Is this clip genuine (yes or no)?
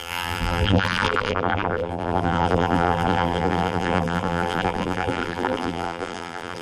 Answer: no